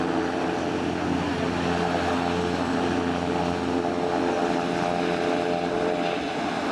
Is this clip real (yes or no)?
yes